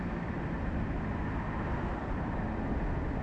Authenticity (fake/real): real